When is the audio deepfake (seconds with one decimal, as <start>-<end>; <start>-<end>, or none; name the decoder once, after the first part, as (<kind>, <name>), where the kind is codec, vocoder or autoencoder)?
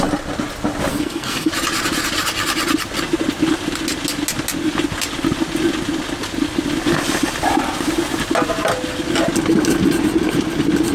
0.9-1.5 (codec, SNAC)